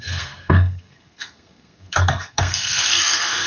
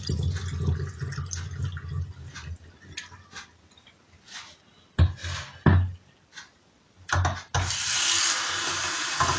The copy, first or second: first